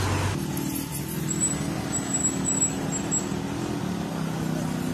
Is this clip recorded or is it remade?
recorded